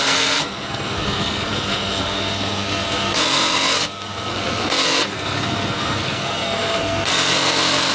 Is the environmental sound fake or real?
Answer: fake